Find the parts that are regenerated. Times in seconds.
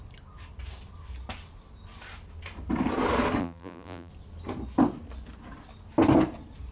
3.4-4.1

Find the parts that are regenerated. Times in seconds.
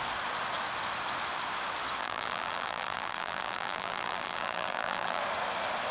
2.0-5.2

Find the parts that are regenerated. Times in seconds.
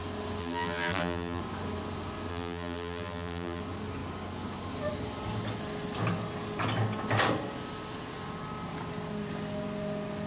0.4-1.4; 2.3-3.6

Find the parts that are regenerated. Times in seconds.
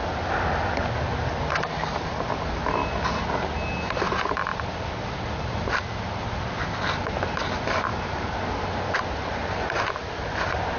1.3-2.8; 5.4-7.9; 9.1-10.8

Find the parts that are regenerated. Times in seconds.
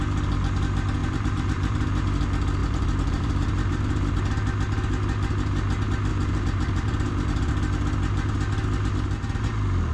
1.0-2.2; 2.6-4.2; 6.1-7.5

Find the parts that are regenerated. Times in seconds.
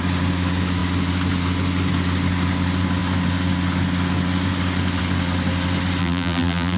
6.0-6.8